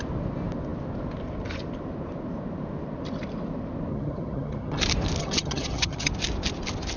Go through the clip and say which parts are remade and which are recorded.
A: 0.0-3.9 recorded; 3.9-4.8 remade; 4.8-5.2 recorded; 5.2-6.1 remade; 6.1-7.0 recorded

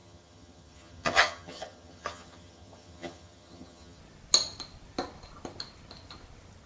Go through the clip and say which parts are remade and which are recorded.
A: 0.0-4.0 remade; 4.0-6.7 recorded

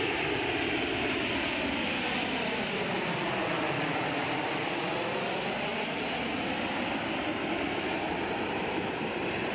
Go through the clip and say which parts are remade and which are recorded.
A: 0.0-9.5 recorded

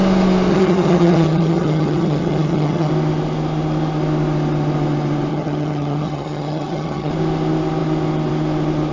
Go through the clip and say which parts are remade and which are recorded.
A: 0.0-0.5 recorded; 0.5-2.9 remade; 2.9-5.3 recorded; 5.3-7.1 remade; 7.1-8.9 recorded

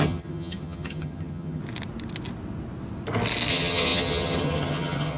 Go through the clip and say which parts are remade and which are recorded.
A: 0.0-1.6 remade; 1.6-3.5 recorded; 3.5-5.2 remade

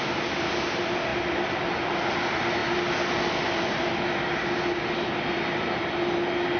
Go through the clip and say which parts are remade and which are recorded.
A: 0.0-6.6 recorded

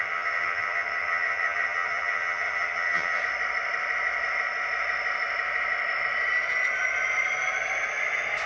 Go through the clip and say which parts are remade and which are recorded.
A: 0.0-3.2 remade; 3.2-8.5 recorded